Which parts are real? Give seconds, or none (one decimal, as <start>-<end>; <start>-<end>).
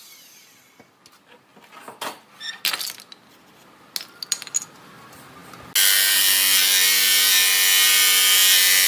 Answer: 0.0-8.9